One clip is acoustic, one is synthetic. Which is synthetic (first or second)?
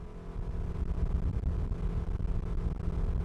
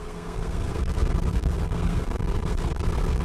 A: second